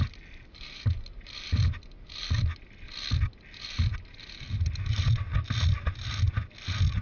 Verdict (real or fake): real